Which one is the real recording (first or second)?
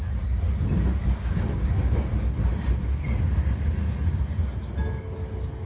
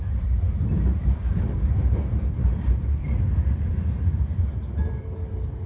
first